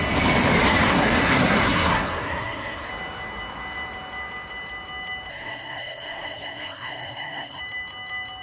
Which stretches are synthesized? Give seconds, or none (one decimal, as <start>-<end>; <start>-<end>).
0.9-2.9; 5.3-7.6